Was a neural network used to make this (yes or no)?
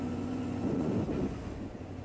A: yes